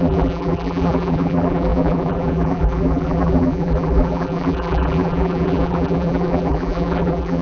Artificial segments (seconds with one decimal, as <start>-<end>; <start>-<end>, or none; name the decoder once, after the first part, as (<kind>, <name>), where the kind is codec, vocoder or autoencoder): 0.0-7.4 (vocoder, BigVGAN v2)